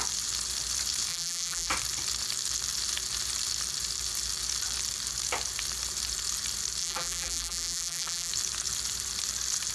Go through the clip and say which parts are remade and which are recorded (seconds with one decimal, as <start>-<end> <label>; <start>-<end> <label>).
0.0-1.1 recorded; 1.1-1.7 remade; 1.7-6.8 recorded; 6.8-8.3 remade; 8.3-9.7 recorded